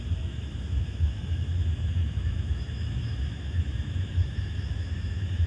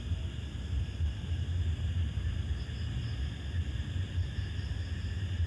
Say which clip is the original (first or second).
second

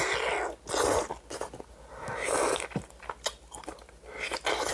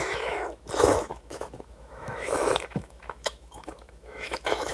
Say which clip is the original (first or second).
first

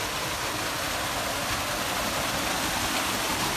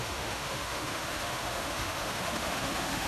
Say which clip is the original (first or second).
first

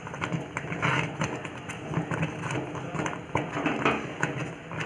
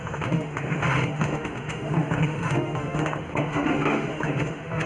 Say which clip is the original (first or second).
first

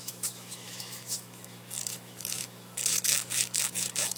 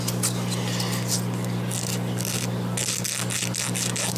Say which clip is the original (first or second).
second